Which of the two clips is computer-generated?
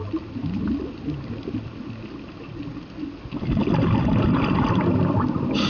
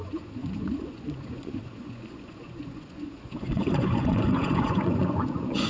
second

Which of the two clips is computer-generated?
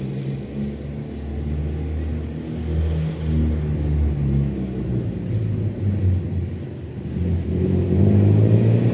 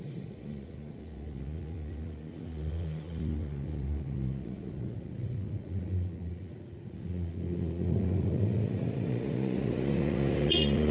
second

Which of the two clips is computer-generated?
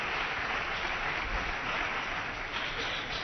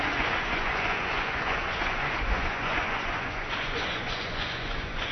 second